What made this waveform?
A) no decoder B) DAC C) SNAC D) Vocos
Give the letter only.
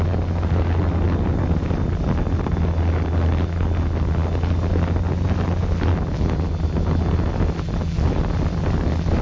A